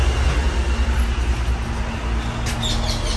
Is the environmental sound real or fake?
real